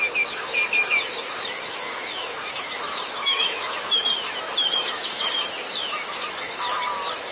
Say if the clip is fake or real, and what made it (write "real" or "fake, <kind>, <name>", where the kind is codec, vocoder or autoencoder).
fake, autoencoder, DAC-VAE